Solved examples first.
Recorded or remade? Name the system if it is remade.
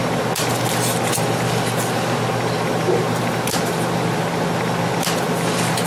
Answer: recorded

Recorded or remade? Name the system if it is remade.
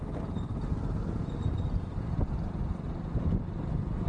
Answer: recorded